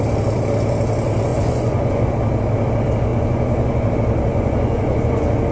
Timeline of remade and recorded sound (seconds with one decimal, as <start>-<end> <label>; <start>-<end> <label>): 0.0-1.3 recorded; 1.3-2.1 remade; 2.1-3.1 recorded; 3.1-3.9 remade; 3.9-4.3 recorded; 4.3-5.5 remade